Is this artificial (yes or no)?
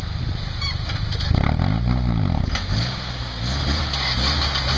no